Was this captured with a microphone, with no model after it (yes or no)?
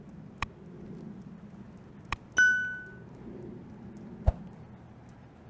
yes